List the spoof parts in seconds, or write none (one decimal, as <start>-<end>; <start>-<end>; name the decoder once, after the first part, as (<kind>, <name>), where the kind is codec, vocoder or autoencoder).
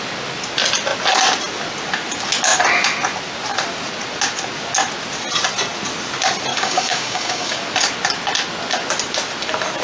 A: 6.5-7.6 (codec, DAC)